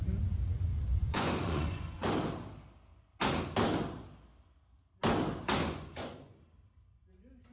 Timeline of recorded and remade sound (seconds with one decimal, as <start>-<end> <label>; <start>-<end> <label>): 0.0-0.7 recorded; 0.7-2.1 remade; 2.1-5.6 recorded; 5.6-6.4 remade; 6.4-7.5 recorded